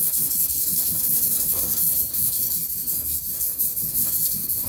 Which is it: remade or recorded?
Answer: remade